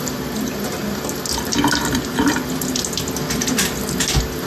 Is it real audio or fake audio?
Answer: real